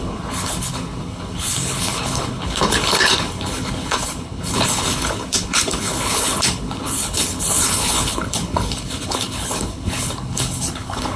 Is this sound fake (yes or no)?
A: yes